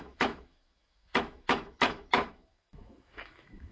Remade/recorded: remade